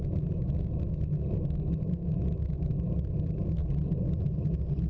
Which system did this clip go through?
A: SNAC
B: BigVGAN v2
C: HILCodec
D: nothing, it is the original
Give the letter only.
D